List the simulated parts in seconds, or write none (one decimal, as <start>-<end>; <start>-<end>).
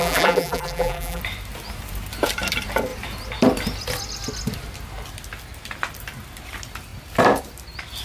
0.0-1.2